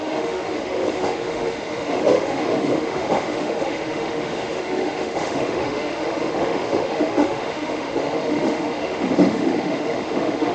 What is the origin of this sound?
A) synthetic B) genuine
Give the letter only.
A